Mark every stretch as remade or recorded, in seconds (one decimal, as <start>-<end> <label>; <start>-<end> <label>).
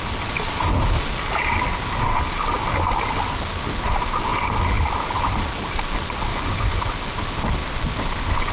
0.0-6.3 recorded; 6.3-6.9 remade; 6.9-8.5 recorded